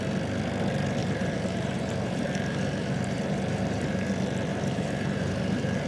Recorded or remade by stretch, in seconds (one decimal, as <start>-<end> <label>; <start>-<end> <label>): 0.0-1.0 recorded; 1.0-4.1 remade; 4.1-4.5 recorded; 4.5-5.9 remade